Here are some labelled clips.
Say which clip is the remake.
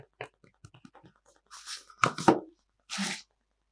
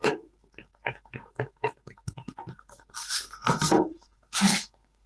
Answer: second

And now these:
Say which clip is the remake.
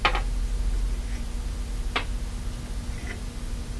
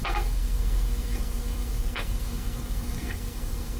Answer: second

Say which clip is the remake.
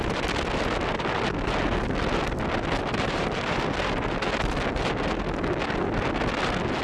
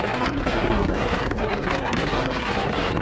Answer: second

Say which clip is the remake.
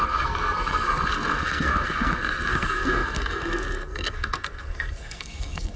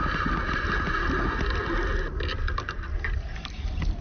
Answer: first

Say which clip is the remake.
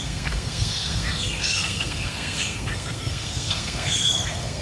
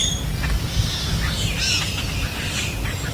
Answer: first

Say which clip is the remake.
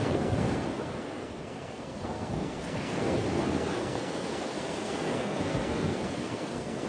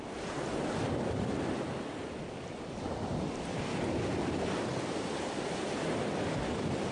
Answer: first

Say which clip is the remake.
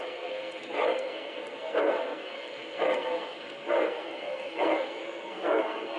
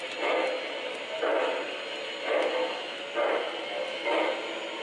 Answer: first